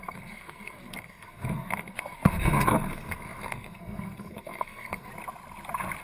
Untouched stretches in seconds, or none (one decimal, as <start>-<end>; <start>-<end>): 5.1-6.0